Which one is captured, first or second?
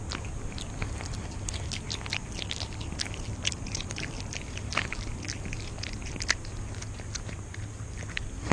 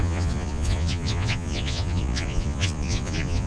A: first